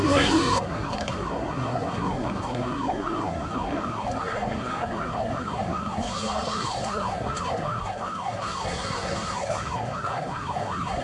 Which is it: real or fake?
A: fake